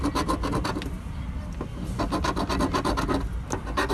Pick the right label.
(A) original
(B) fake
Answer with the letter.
A